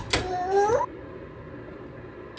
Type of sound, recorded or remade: recorded